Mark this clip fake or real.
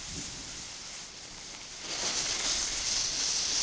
real